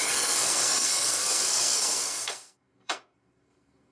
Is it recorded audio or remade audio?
remade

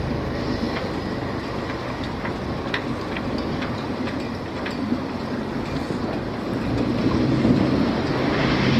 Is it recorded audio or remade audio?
recorded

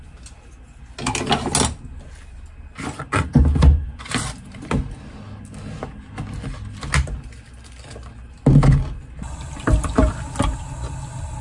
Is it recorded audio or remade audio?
recorded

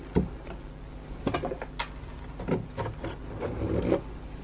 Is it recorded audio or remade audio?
recorded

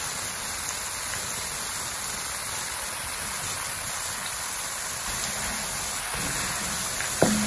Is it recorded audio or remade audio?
recorded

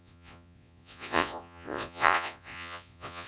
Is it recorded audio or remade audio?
remade